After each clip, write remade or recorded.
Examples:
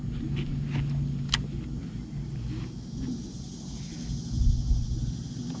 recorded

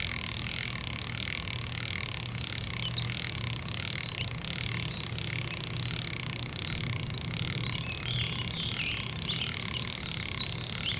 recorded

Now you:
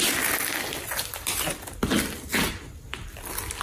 recorded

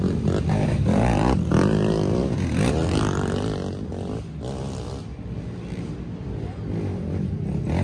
recorded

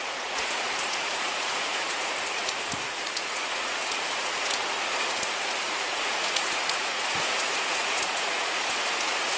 remade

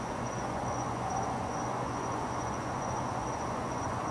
remade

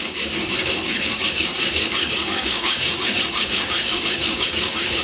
remade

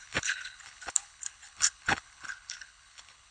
remade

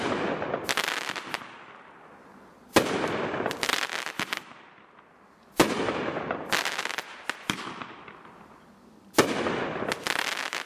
recorded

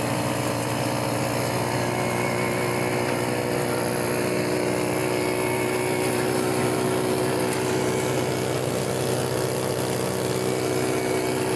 recorded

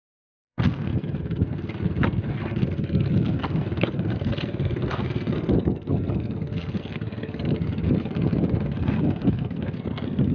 remade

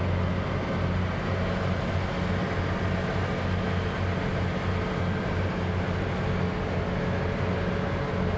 recorded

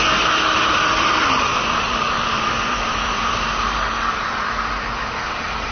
remade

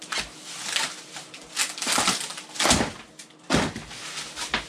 recorded